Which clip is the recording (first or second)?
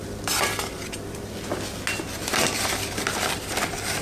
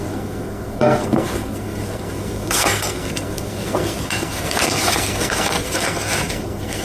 first